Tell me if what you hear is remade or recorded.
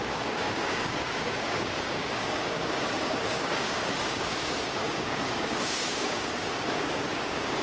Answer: remade